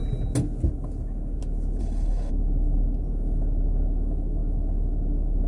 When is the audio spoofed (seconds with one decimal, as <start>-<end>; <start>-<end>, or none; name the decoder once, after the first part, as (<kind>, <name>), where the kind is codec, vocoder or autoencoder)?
1.8-2.3 (codec, HILCodec)